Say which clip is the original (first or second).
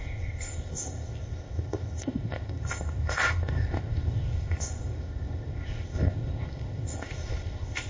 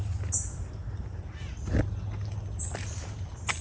second